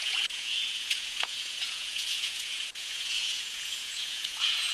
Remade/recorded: remade